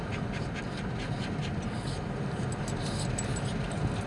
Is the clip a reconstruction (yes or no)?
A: no